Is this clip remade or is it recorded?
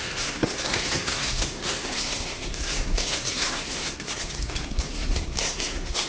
remade